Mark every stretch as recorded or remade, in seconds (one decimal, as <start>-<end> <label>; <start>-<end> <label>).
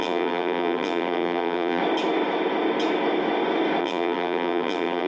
0.0-1.8 remade; 1.8-3.8 recorded; 3.8-5.1 remade